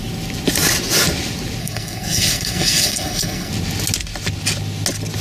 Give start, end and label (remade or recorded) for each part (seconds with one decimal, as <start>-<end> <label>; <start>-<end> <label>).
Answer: 0.0-1.6 recorded; 1.6-3.5 remade; 3.5-5.2 recorded